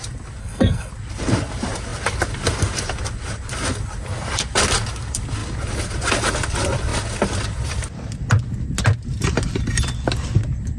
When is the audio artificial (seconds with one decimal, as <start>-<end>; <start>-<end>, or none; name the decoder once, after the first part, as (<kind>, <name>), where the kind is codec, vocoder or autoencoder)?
0.4-0.9 (codec, SNAC)